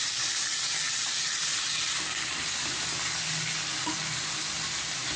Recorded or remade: recorded